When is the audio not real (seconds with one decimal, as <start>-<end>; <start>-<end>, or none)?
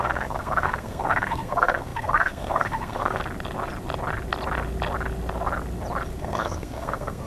0.0-3.2; 6.2-7.3